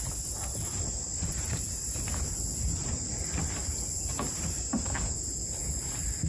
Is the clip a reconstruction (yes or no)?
no